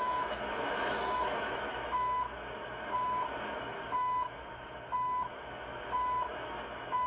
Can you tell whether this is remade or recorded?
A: remade